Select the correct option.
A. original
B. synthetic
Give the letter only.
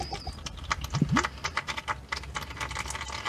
A